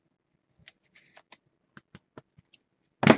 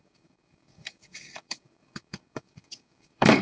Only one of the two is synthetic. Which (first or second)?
second